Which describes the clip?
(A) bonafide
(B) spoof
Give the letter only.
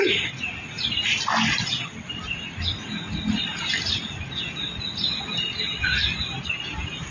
A